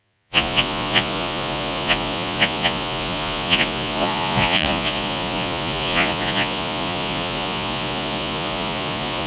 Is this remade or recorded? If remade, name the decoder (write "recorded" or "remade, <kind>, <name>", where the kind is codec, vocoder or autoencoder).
remade, vocoder, Vocos